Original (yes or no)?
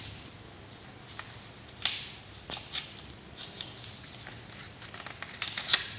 yes